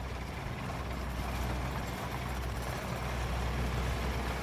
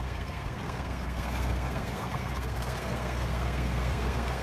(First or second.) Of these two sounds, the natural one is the first